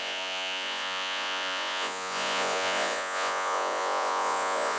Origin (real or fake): fake